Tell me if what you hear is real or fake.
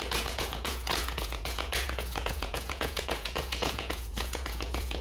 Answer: fake